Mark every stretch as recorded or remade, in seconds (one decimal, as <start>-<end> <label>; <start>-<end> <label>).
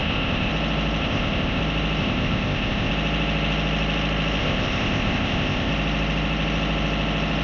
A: 0.0-0.5 remade; 0.5-1.0 recorded; 1.0-1.6 remade; 1.6-2.0 recorded; 2.0-2.9 remade; 2.9-4.4 recorded; 4.4-5.7 remade; 5.7-7.4 recorded